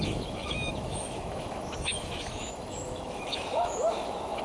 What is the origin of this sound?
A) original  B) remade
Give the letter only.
B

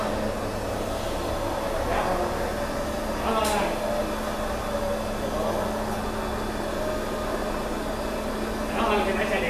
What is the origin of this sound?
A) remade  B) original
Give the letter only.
B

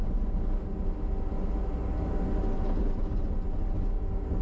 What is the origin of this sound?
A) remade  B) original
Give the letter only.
B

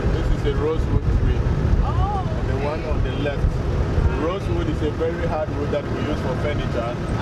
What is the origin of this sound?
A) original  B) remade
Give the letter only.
A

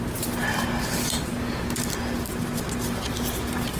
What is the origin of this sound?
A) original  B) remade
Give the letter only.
A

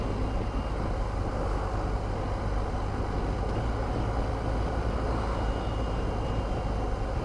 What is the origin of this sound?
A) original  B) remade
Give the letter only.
A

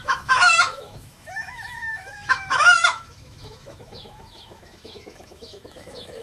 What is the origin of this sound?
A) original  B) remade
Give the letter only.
B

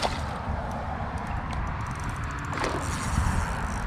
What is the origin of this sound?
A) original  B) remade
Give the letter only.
A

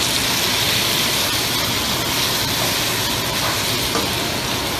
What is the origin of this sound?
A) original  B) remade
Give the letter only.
A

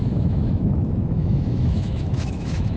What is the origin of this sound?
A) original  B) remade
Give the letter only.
B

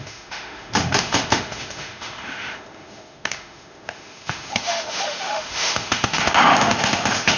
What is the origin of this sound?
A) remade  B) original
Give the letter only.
A